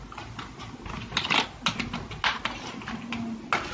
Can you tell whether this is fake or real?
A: real